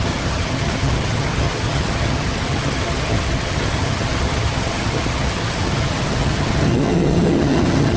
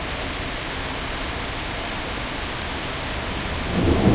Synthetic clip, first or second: first